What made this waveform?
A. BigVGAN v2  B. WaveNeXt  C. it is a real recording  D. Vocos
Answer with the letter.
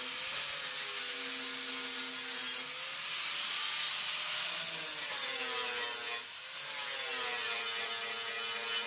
C